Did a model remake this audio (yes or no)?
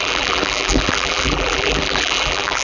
yes